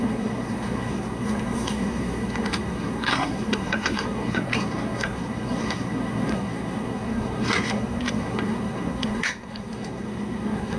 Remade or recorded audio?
remade